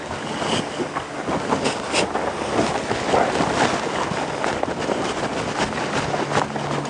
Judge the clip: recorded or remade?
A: recorded